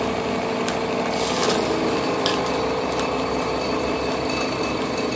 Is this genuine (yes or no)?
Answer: yes